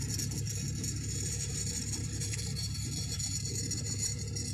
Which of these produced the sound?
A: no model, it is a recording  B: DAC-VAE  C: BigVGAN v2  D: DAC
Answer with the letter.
A